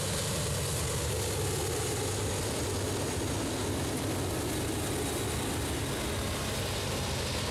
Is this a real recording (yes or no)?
yes